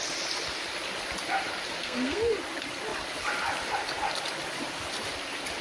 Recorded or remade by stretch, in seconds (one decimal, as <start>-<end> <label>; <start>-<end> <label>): 0.0-1.8 recorded; 1.8-2.4 remade; 2.4-5.6 recorded